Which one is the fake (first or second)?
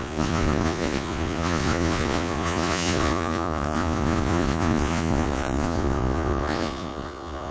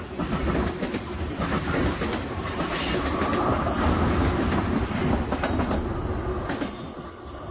first